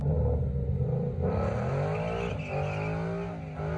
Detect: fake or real real